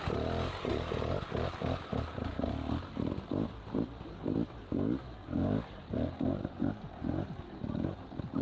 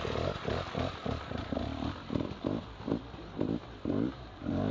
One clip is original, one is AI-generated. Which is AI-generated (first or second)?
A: second